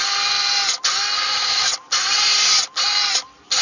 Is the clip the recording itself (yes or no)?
yes